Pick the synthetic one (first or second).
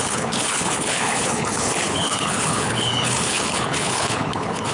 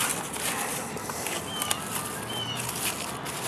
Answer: first